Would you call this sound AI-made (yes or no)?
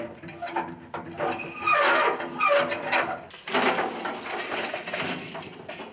yes